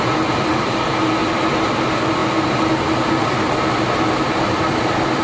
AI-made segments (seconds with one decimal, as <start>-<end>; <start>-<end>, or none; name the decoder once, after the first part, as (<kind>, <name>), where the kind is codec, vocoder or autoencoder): none